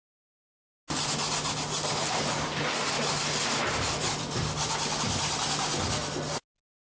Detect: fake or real real